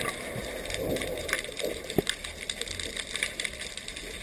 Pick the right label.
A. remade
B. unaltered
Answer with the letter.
B